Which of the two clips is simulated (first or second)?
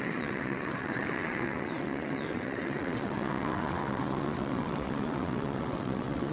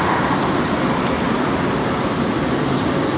first